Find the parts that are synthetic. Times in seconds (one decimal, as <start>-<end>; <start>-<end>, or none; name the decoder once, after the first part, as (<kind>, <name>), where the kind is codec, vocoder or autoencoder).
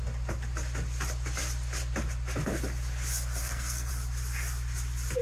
3.4-3.9 (codec, SNAC)